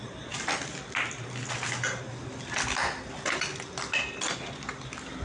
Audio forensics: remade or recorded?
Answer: recorded